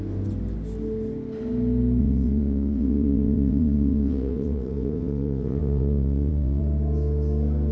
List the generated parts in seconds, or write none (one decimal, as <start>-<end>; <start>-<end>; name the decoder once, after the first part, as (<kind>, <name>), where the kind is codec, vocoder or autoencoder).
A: 2.0-6.6 (vocoder, WaveNeXt)